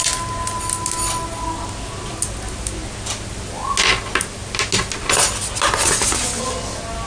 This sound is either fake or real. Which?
real